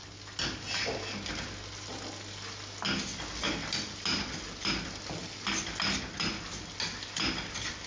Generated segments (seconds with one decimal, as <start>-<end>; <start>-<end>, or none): none